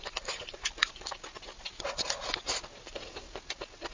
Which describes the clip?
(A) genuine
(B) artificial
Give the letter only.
A